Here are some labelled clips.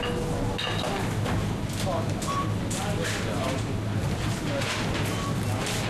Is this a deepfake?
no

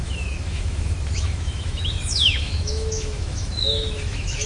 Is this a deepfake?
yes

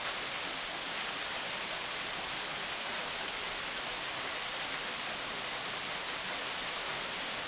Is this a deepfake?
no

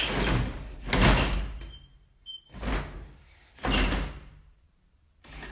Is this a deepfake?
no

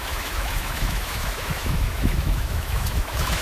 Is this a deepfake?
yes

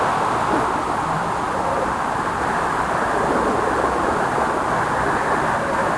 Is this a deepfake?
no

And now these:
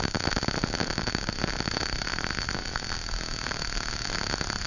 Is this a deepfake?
no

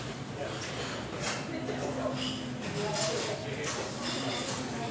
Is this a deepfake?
no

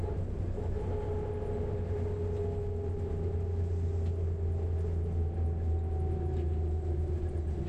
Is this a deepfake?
no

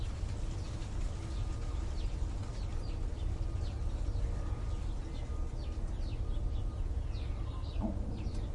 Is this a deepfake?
no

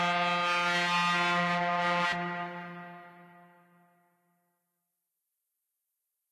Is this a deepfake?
no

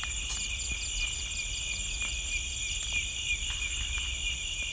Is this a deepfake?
no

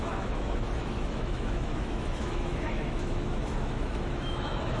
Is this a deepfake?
yes